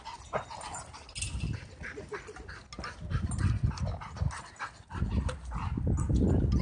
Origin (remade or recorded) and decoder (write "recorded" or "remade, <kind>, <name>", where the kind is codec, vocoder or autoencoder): recorded